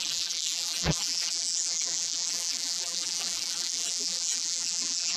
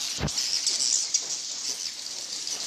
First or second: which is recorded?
second